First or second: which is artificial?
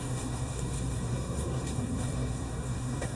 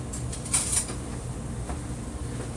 first